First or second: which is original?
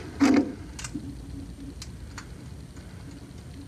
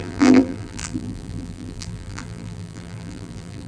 first